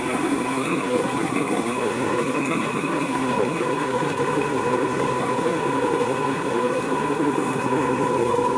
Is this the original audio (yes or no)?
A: no